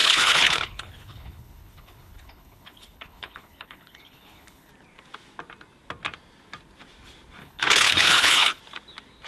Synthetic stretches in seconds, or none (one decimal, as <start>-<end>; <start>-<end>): 0.0-4.7; 7.4-8.6